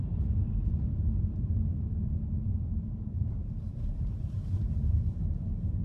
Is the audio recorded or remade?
remade